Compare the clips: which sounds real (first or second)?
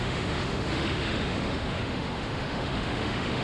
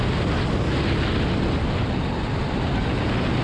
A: second